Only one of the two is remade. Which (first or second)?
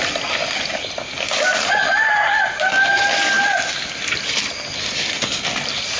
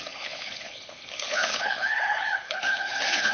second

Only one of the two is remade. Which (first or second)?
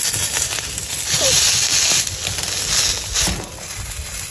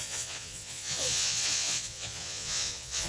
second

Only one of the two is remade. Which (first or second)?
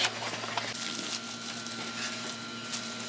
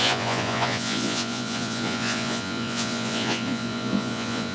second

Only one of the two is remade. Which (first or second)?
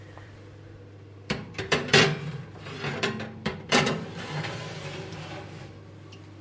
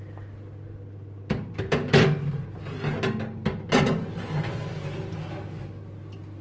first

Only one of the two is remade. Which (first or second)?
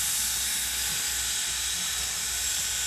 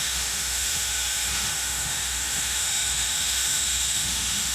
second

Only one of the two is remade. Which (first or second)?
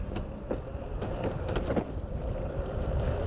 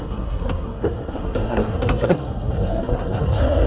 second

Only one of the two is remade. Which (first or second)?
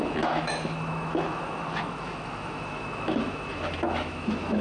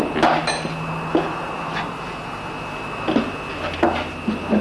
first